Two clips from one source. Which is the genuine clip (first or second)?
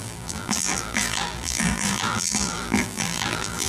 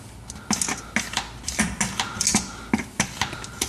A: second